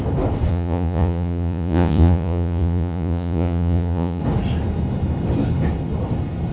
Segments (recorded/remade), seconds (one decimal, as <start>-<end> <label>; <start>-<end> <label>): 0.0-0.5 recorded; 0.5-4.2 remade; 4.2-6.5 recorded